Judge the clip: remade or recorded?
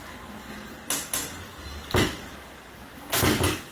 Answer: recorded